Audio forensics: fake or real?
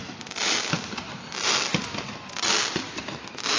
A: real